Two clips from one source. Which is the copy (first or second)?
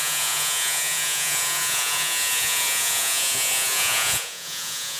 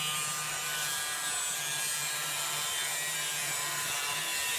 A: first